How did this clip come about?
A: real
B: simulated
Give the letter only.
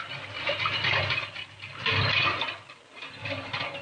A